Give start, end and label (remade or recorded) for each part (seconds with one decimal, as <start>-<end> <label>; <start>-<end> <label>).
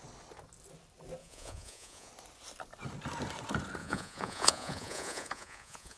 0.0-1.2 recorded; 1.2-2.1 remade; 2.1-3.8 recorded; 3.8-6.0 remade